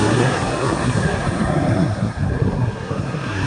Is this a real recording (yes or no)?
no